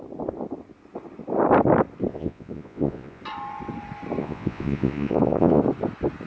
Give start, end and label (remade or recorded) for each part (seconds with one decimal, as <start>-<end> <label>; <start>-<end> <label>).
0.0-2.1 recorded; 2.1-3.2 remade; 3.2-4.2 recorded; 4.2-5.6 remade; 5.6-6.3 recorded